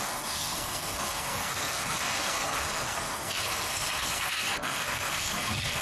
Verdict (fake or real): fake